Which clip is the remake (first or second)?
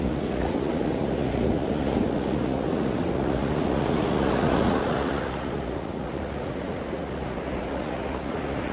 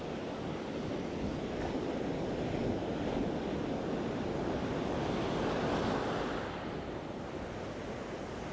first